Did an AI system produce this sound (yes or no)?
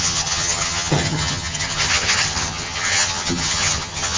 yes